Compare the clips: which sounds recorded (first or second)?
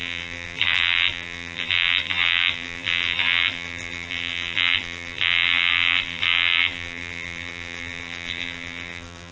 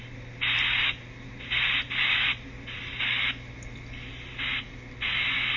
second